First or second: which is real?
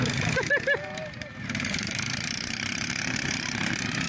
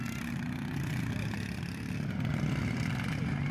second